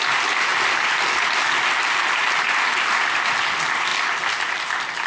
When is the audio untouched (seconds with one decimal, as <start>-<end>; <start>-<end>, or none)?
0.0-5.1